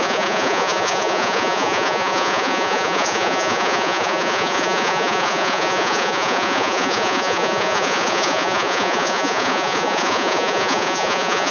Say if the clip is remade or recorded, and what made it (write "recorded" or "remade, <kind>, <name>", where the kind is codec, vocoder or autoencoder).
remade, vocoder, Vocos